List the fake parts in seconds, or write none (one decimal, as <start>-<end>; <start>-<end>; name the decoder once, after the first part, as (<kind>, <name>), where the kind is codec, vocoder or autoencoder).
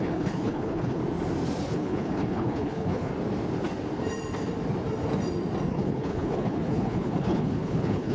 0.0-1.0 (codec, HILCodec); 1.6-3.1; 5.7-8.1